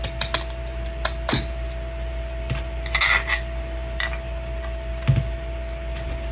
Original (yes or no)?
yes